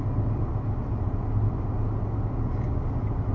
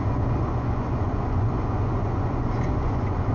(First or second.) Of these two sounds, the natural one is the first